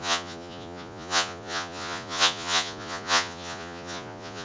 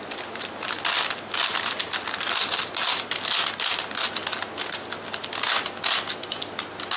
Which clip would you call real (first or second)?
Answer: second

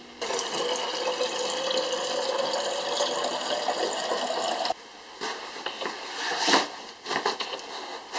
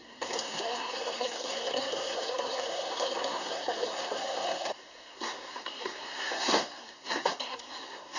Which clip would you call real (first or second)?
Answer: first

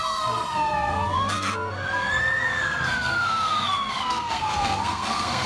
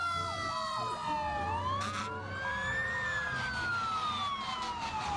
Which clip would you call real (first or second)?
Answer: second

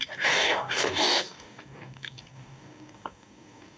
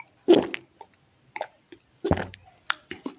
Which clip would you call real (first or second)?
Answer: second